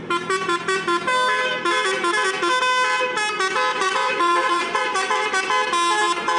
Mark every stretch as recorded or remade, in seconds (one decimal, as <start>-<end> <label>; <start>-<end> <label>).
0.0-3.7 recorded; 3.7-4.8 remade; 4.8-6.4 recorded